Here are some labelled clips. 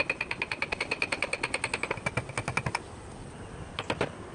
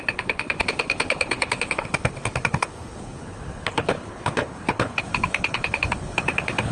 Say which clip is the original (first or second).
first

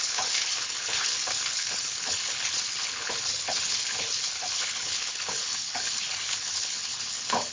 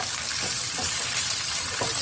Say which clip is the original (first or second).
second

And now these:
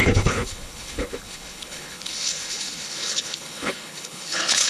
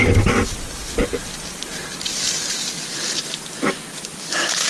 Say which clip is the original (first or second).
second